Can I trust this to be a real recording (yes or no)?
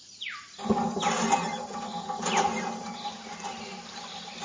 yes